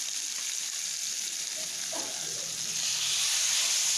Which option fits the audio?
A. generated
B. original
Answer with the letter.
B